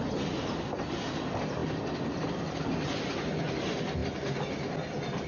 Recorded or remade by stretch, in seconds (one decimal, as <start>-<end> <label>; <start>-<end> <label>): 0.0-5.3 recorded